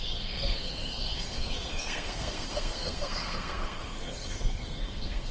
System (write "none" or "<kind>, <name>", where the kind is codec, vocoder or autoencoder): codec, SNAC